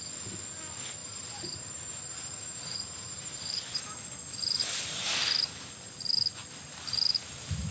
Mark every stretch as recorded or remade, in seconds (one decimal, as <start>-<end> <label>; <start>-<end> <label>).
0.0-1.0 recorded; 1.0-3.8 remade; 3.8-7.7 recorded